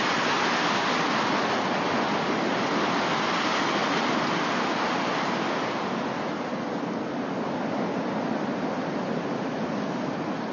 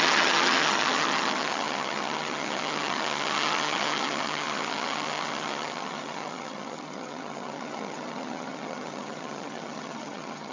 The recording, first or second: first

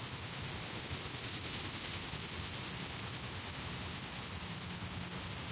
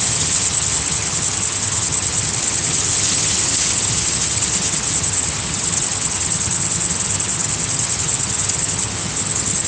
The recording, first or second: first